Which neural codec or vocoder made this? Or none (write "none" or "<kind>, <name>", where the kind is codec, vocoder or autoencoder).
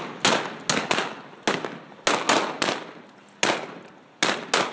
none